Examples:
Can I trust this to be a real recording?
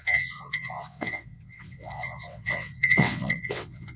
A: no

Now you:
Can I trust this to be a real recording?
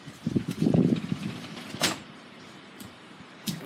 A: no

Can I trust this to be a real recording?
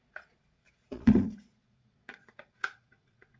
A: no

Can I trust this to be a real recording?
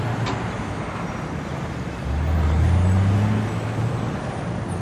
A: yes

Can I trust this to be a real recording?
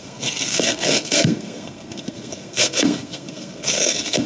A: no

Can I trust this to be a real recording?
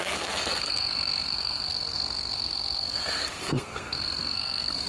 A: no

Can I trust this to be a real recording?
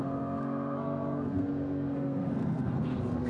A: no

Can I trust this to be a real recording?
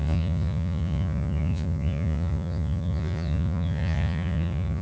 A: no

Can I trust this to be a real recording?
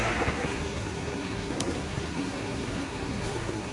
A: no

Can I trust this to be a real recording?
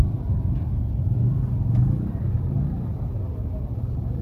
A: yes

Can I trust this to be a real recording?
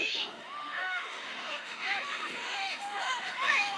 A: no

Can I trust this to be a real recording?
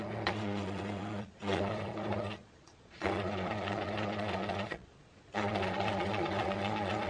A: no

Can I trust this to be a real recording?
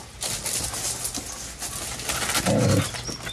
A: yes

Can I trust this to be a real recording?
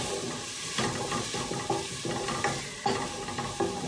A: yes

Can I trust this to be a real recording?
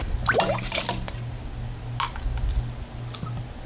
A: yes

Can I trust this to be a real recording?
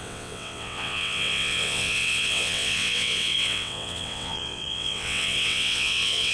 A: no